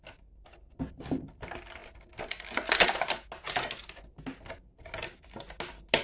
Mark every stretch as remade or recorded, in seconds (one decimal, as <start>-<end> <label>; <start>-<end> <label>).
0.0-6.0 recorded